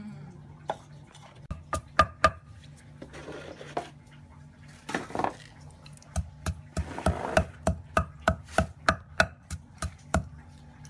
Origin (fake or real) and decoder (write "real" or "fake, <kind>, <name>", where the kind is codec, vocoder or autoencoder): real